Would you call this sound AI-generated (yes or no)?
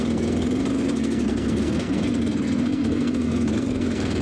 yes